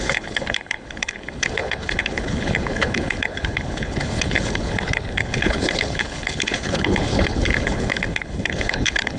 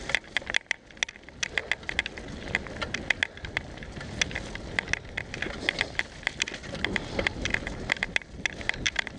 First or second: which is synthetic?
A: first